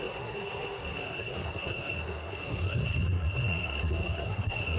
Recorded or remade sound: remade